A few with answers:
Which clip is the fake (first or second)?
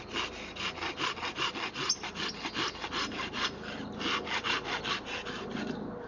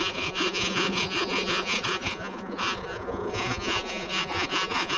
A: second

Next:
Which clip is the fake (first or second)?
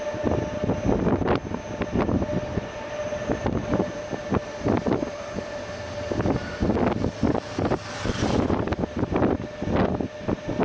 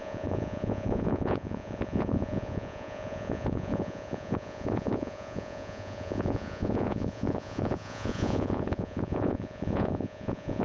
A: second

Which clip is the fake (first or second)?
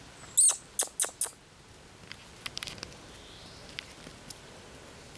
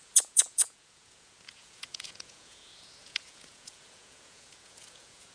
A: second